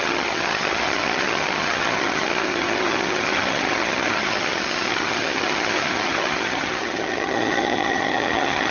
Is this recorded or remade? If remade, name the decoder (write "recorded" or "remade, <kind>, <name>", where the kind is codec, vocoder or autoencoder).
remade, vocoder, HiFi-GAN